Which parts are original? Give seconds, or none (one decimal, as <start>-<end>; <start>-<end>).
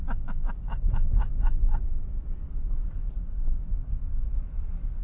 0.0-5.0